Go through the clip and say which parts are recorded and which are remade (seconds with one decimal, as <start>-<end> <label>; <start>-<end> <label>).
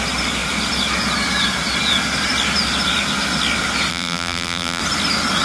0.0-3.9 recorded; 3.9-4.8 remade; 4.8-5.4 recorded